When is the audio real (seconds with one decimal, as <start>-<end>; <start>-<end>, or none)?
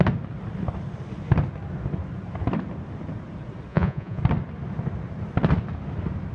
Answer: 0.0-3.7; 4.2-6.3